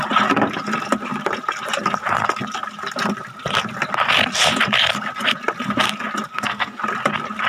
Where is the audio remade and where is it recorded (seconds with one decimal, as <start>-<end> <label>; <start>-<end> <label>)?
0.0-6.3 recorded; 6.3-6.8 remade; 6.8-7.5 recorded